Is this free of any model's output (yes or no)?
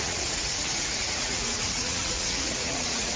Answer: no